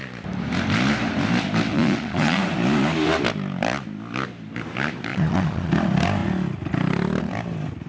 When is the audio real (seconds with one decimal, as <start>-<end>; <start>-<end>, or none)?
0.0-1.7; 2.4-5.1; 5.7-7.9